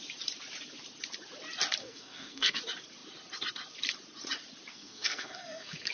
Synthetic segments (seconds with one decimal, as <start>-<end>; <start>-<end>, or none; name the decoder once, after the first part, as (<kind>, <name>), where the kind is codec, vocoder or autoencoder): 1.8-2.6 (codec, SNAC); 4.7-5.9